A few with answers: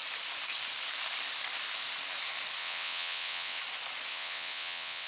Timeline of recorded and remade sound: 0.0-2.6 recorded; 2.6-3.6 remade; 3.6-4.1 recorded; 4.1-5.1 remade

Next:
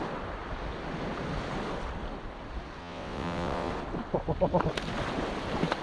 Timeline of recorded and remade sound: 0.0-2.8 recorded; 2.8-3.7 remade; 3.7-5.8 recorded

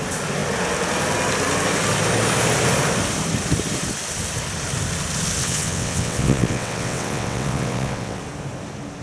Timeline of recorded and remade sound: 0.0-5.4 recorded; 5.4-8.2 remade; 8.2-9.0 recorded

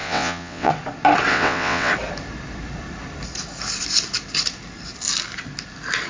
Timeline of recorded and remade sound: 0.0-0.7 remade; 0.7-1.3 recorded; 1.3-1.9 remade; 1.9-6.1 recorded